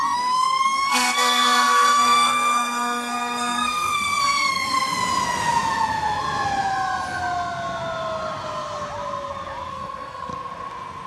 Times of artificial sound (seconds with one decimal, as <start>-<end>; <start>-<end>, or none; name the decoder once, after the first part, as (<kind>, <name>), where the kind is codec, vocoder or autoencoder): 0.0-5.0 (codec, SNAC); 9.7-10.3